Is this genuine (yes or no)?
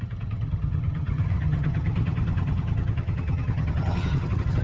no